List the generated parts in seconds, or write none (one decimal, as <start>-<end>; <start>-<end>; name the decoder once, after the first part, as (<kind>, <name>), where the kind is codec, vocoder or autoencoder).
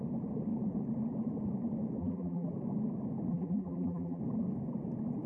2.0-2.5 (vocoder, BigVGAN v2); 3.3-4.2